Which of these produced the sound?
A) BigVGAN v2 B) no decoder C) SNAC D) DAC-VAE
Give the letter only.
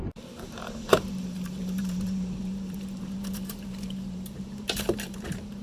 A